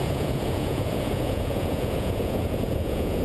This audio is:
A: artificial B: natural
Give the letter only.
A